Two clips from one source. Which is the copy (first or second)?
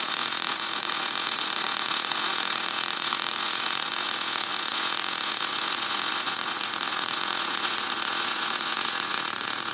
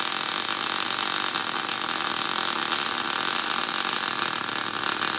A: first